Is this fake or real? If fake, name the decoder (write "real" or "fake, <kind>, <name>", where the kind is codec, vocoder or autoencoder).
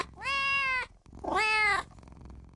real